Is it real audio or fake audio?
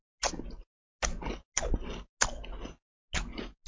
real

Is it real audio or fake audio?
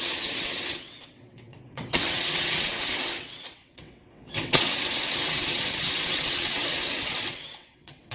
fake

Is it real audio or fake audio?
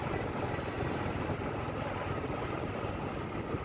real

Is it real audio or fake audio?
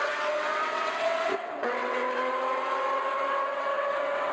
fake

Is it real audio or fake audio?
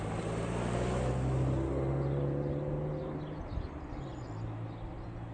real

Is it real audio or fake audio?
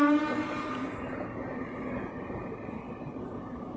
real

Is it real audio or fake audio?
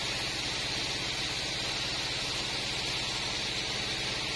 real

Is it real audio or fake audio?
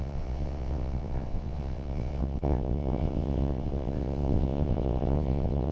fake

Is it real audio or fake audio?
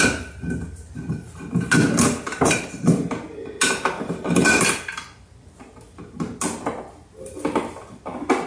real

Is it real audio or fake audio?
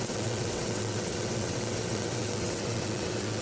fake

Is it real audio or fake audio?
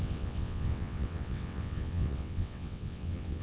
fake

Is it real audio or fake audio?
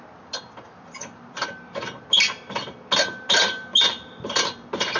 real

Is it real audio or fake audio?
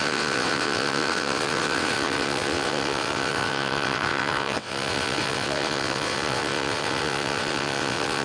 fake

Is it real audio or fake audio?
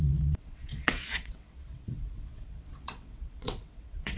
fake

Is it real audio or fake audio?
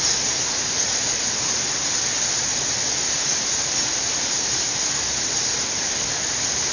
real